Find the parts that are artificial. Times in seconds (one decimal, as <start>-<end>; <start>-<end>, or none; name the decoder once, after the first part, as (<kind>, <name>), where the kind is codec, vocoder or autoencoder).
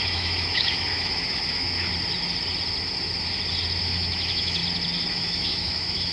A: 0.0-1.9 (autoencoder, DAC-VAE); 3.8-4.6; 5.1-6.1